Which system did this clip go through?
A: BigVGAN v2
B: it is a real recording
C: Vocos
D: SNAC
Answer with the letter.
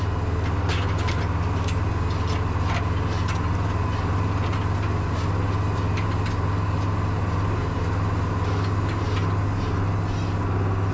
B